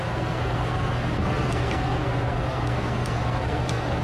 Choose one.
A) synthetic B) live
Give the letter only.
A